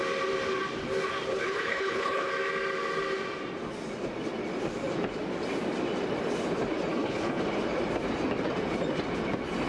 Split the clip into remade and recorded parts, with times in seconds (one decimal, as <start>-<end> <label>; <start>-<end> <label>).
0.0-1.3 recorded; 1.3-2.3 remade; 2.3-6.9 recorded; 6.9-7.4 remade; 7.4-9.7 recorded